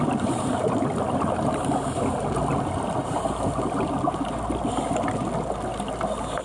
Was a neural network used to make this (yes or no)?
no